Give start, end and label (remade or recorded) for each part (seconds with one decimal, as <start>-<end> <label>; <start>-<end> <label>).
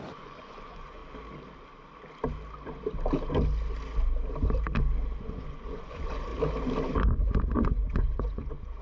0.0-1.0 remade; 1.0-5.2 recorded; 5.2-6.3 remade; 6.3-7.0 recorded; 7.0-8.8 remade